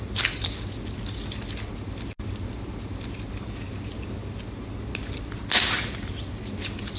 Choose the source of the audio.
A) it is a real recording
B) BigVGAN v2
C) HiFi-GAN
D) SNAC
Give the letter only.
A